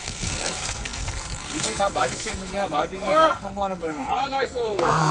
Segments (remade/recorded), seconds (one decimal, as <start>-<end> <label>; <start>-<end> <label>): 0.0-5.1 remade

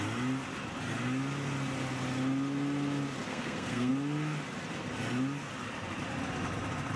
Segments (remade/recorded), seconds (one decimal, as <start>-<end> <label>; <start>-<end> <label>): 0.0-3.3 recorded; 3.3-3.9 remade; 3.9-7.0 recorded

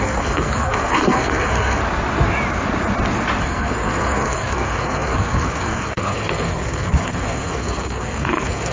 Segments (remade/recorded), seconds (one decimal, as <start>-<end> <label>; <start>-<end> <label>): 0.0-1.8 remade; 1.8-3.4 recorded; 3.4-8.7 remade

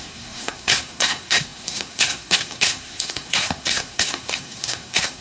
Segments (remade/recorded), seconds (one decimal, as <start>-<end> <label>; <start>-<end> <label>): 0.0-5.2 remade